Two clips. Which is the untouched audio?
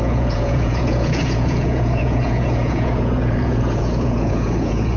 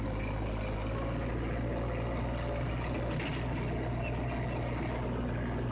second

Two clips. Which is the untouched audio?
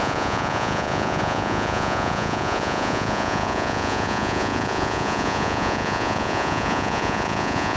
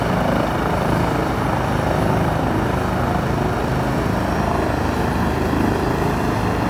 second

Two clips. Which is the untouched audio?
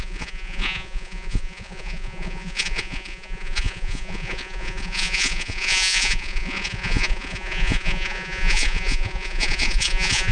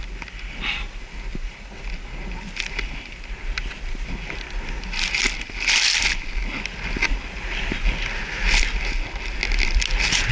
second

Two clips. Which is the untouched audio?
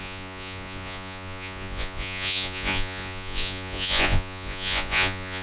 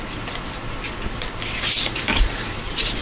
second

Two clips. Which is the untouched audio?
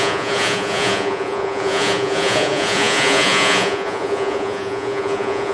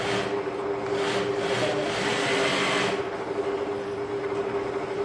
second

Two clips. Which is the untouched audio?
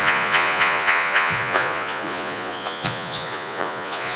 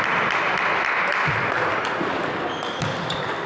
second